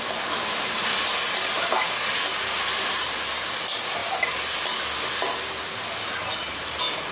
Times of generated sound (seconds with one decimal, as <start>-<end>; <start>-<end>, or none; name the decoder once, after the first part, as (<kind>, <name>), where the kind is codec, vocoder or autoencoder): 0.0-4.0 (vocoder, BigVGAN v2)